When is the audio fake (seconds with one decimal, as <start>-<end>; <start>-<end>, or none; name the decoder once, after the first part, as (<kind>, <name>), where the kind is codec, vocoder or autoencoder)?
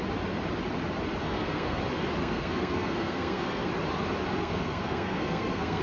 1.2-1.8 (codec, SNAC); 2.2-3.7; 4.4-5.8